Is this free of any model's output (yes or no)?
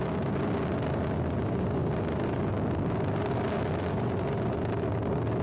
yes